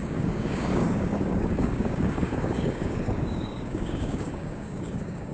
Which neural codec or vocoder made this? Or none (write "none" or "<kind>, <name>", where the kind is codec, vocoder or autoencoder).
codec, DAC